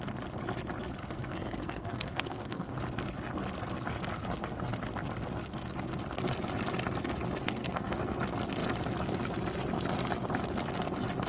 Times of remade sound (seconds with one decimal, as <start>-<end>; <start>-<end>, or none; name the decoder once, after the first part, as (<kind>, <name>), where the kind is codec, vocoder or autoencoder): 1.0-2.7 (codec, SNAC); 7.4-8.2